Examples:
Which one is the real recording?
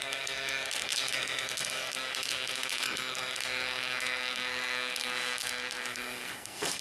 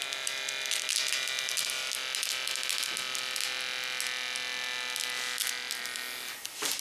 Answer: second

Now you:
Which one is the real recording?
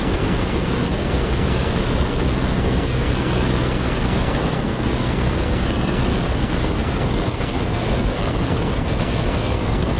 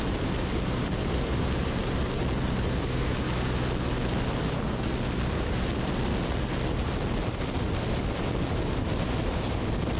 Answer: second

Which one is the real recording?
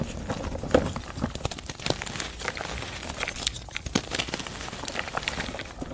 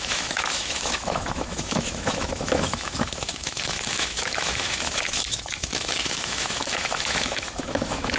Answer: first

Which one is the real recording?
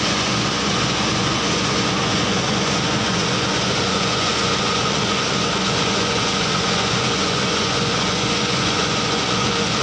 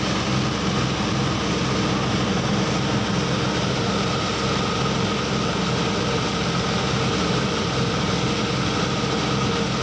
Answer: second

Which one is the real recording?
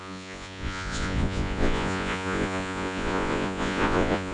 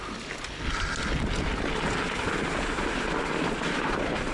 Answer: second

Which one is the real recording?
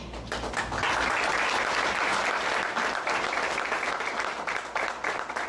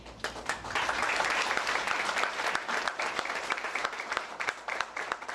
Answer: first